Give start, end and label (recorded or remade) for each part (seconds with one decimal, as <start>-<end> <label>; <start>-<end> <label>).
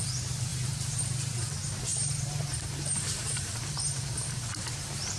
0.0-0.5 recorded; 0.5-1.0 remade; 1.0-1.9 recorded; 1.9-5.2 remade